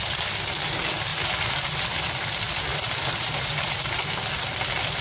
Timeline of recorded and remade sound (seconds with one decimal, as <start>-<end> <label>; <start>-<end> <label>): 0.0-1.1 recorded; 1.1-2.1 remade; 2.1-2.7 recorded; 2.7-4.0 remade; 4.0-5.0 recorded